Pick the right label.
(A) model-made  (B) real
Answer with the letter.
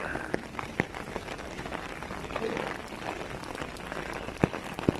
B